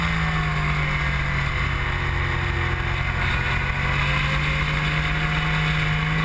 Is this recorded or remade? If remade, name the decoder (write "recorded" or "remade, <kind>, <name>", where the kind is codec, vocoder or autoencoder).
recorded